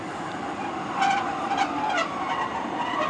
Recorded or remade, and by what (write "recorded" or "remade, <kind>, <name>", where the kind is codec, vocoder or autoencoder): recorded